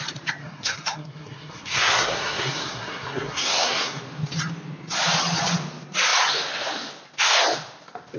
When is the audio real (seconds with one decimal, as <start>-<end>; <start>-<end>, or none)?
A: 0.0-0.4; 4.0-8.2